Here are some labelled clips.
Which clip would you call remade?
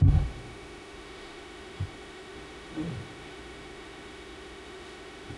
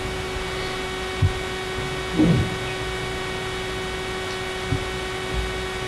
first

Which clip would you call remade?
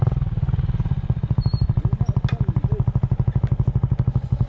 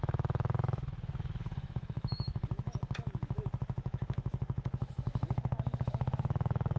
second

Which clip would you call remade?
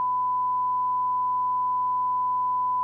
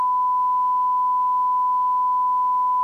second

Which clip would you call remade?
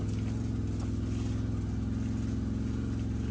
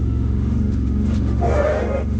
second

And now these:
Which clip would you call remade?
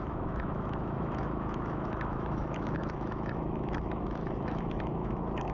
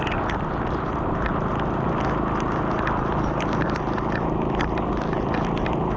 first